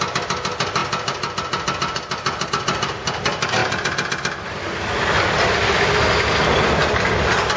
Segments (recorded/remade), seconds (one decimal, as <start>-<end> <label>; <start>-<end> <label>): 0.0-7.6 recorded